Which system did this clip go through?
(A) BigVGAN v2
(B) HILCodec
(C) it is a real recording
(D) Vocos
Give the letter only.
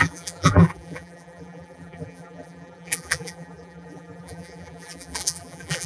A